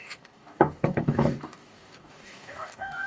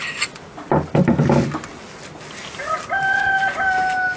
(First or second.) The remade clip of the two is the first